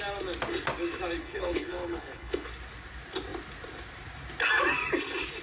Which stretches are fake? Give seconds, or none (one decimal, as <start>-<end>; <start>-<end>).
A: 1.2-2.5